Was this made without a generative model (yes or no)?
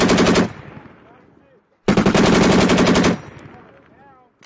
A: yes